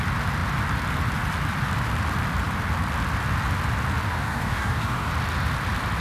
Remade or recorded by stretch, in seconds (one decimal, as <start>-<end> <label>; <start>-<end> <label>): 0.0-4.1 recorded; 4.1-5.1 remade; 5.1-6.0 recorded